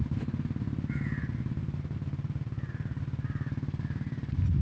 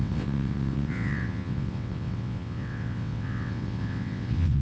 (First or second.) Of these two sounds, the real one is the first